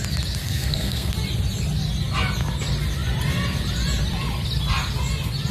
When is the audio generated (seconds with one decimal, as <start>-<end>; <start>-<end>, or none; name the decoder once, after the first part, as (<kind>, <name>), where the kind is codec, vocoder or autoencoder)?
0.4-1.1 (codec, SNAC)